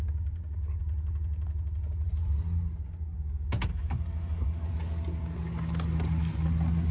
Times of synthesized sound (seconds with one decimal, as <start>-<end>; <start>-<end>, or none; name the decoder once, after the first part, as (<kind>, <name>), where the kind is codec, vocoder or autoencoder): 3.7-4.7 (codec, DAC)